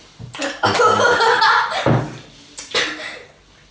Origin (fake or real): real